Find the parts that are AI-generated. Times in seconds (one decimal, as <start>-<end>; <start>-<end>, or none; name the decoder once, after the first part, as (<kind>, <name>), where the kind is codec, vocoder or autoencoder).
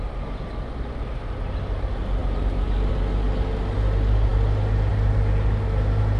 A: none